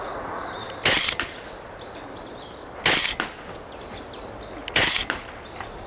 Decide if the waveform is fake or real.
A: real